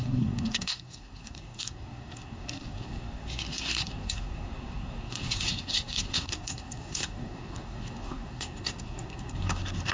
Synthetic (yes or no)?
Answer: yes